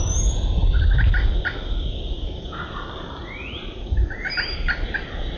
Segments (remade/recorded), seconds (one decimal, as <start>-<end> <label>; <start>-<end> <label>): 0.0-3.2 recorded; 3.2-4.2 remade; 4.2-5.4 recorded